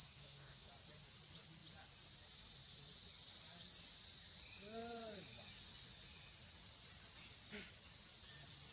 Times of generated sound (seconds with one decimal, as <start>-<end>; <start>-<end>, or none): 0.0-0.7